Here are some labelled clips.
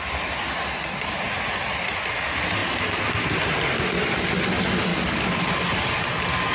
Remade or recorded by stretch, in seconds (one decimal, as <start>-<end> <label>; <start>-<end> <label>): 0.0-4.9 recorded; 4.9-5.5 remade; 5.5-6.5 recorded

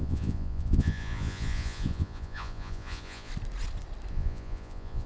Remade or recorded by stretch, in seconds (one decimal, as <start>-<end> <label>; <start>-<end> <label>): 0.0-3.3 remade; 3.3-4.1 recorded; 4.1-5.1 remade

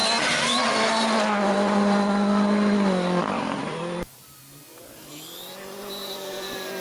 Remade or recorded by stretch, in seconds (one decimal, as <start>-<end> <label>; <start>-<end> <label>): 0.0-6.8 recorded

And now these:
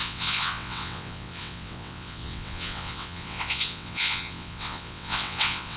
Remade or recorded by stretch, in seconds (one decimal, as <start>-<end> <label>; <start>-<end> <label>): 0.0-5.8 remade

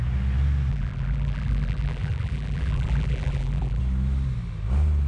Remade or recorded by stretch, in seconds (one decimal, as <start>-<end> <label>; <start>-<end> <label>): 0.0-0.7 recorded; 0.7-3.8 remade; 3.8-5.1 recorded

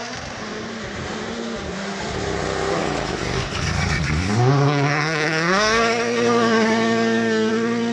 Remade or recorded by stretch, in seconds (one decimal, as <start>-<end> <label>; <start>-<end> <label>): 0.0-2.8 recorded; 2.8-7.5 remade; 7.5-7.9 recorded